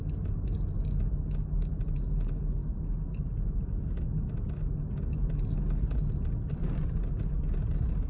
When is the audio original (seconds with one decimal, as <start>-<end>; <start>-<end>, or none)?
0.0-8.1